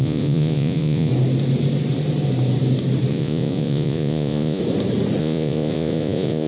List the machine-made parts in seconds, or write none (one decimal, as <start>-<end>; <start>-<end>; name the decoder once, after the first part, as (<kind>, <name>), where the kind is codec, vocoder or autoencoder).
0.0-1.1 (vocoder, Vocos); 3.1-4.6; 5.2-6.5